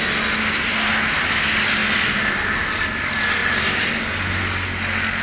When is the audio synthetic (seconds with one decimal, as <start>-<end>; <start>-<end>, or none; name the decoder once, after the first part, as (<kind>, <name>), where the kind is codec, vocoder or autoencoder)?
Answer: 3.4-3.9 (vocoder, BigVGAN v2)

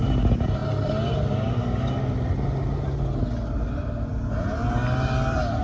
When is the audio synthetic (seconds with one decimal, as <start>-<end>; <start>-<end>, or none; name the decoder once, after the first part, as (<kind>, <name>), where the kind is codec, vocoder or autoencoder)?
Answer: none

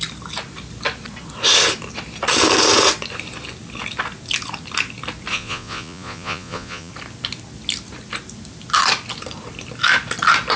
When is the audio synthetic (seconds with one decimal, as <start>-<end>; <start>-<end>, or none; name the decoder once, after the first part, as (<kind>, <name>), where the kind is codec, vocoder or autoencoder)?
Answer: 5.3-6.9 (vocoder, Vocos)

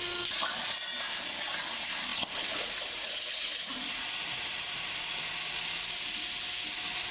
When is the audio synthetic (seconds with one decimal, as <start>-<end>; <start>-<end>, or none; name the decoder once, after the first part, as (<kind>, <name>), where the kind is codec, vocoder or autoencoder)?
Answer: none